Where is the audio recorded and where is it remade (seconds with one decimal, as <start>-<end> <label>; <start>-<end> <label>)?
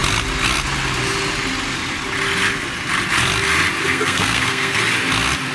0.0-3.8 recorded; 3.8-4.8 remade; 4.8-5.5 recorded